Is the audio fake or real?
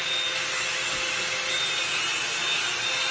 real